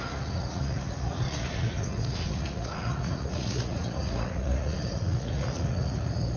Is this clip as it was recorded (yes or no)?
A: no